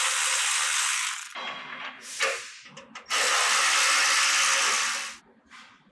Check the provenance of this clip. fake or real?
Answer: real